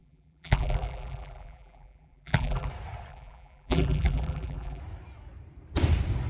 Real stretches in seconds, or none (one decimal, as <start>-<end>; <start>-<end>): 2.7-3.1; 4.8-6.3